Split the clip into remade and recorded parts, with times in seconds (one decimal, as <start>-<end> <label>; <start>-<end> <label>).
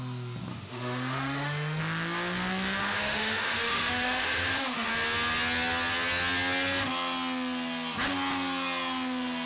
0.0-0.5 recorded; 0.5-1.8 remade; 1.8-2.8 recorded; 2.8-4.9 remade; 4.9-9.5 recorded